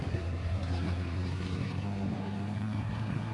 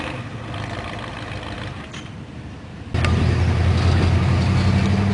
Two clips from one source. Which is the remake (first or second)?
first